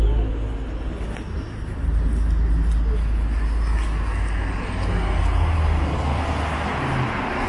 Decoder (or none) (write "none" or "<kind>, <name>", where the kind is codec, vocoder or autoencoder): none